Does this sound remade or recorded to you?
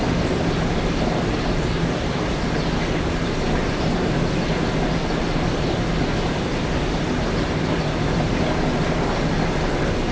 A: recorded